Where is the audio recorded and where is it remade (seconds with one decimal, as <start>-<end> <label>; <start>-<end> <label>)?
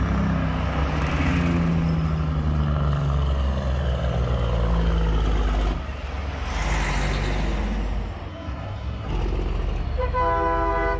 0.0-8.3 recorded; 8.3-9.1 remade; 9.1-11.0 recorded